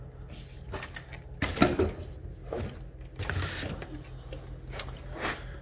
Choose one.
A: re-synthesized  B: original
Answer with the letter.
B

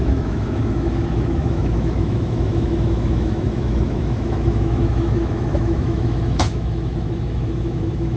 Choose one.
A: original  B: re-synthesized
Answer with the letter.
B